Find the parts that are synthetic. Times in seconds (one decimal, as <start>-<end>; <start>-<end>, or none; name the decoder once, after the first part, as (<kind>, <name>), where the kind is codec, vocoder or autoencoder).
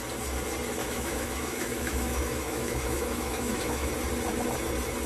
0.8-3.9 (autoencoder, DAC-VAE)